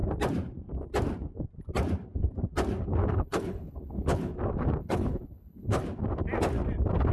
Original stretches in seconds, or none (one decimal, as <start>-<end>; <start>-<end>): 0.0-3.1; 4.3-4.8; 5.8-7.1